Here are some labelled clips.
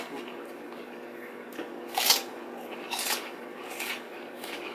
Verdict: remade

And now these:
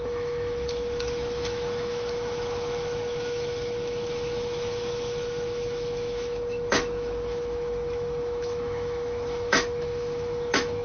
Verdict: remade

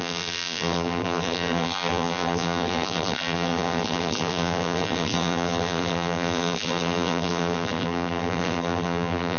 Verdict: remade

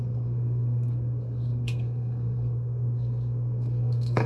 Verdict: remade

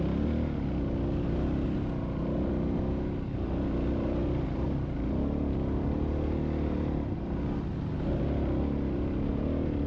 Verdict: recorded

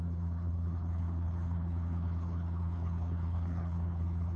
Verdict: remade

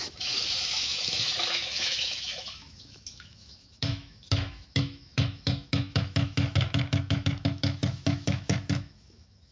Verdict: remade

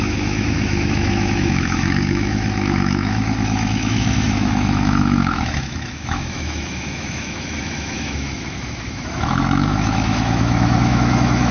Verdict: remade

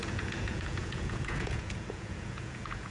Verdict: remade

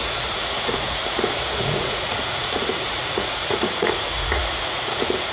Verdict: remade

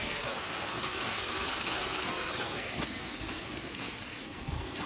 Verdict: remade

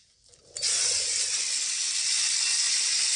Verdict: remade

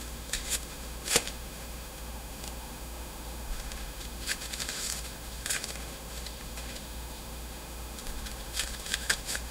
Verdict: remade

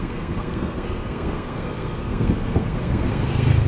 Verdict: remade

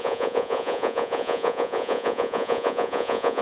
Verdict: remade